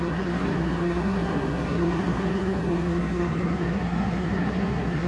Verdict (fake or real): fake